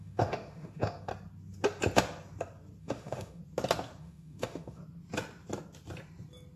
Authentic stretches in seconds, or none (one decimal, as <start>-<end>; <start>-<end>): 1.1-2.8; 3.4-4.0; 4.8-6.6